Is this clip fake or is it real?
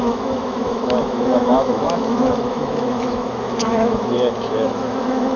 fake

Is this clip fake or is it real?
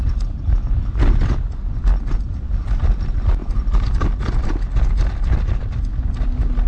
real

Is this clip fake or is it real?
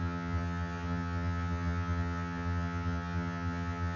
fake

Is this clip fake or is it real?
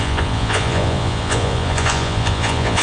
fake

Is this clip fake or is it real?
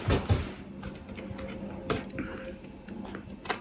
real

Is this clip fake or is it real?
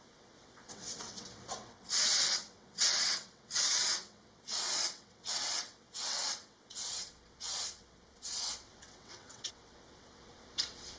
fake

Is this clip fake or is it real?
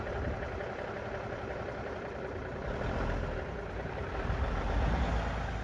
real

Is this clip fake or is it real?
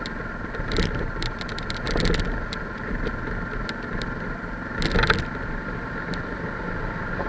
real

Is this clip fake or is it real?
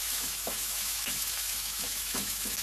fake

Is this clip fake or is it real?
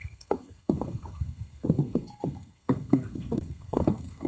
fake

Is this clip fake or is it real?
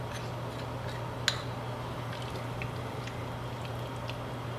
real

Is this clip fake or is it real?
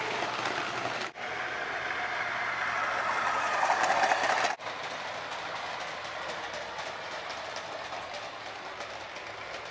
real